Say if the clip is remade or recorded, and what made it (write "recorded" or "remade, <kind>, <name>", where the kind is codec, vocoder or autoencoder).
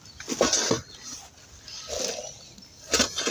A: recorded